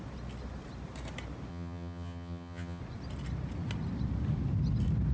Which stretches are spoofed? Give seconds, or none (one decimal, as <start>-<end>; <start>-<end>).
1.5-2.8